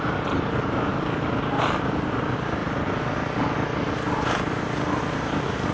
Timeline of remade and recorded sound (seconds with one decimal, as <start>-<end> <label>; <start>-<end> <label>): 0.0-5.7 remade